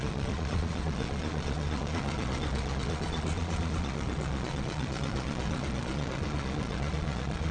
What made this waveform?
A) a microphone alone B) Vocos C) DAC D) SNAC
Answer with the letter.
B